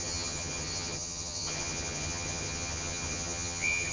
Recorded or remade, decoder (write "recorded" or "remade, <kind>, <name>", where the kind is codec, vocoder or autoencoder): remade, vocoder, HiFi-GAN